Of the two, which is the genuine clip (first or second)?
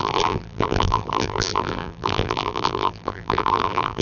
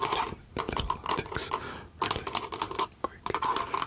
second